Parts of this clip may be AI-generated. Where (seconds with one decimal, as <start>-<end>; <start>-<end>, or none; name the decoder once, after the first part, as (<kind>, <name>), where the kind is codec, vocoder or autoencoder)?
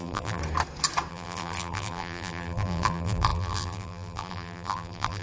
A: 0.0-0.4 (vocoder, BigVGAN v2); 1.1-5.2